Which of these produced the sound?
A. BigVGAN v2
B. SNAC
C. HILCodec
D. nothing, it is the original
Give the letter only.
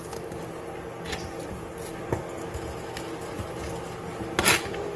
D